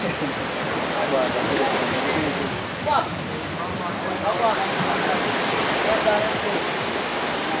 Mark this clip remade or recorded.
recorded